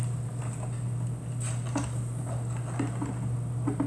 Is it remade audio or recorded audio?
recorded